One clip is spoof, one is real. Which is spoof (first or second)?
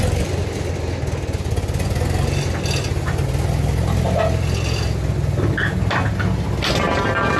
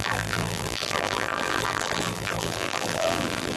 second